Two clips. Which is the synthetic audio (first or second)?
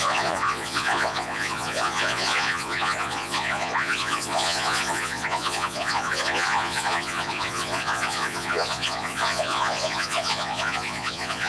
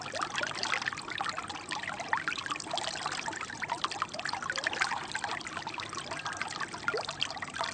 first